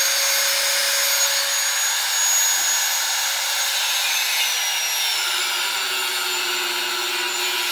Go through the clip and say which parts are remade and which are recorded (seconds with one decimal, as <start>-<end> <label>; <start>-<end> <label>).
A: 0.0-7.7 recorded